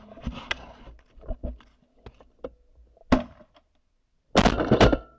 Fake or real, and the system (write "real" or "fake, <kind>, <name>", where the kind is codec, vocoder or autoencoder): real